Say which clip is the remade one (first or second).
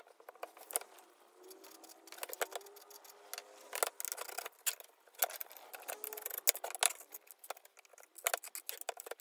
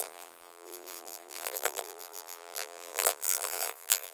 second